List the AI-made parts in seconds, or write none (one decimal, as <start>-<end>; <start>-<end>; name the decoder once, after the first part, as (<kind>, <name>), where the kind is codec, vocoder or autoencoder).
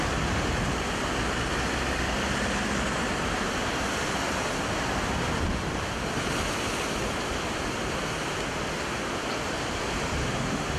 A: 10.2-10.8 (autoencoder, DAC-VAE)